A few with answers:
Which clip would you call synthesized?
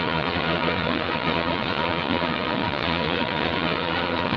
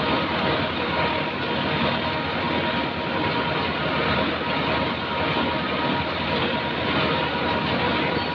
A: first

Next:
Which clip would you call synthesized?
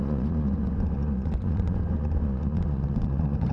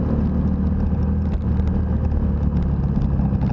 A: first